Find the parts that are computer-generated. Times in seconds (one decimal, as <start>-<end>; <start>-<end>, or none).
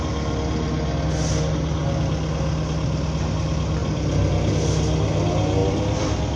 3.8-4.3; 5.6-6.4